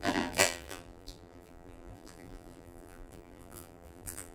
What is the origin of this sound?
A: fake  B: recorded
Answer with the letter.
A